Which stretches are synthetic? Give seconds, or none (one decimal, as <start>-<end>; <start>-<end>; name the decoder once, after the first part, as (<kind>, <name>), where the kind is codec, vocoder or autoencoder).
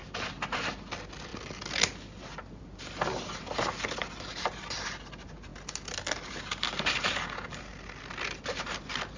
none